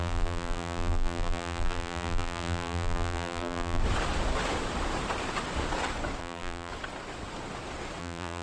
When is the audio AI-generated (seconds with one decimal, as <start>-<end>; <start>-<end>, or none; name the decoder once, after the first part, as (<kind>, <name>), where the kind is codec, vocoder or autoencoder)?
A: 0.0-3.8 (vocoder, BigVGAN v2); 6.2-6.7; 8.0-8.4